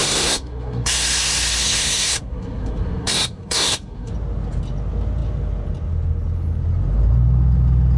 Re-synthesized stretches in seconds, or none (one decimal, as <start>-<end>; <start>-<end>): 0.0-4.1